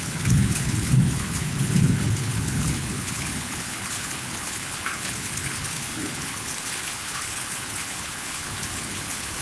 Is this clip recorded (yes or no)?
no